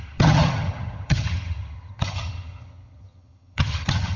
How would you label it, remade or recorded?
remade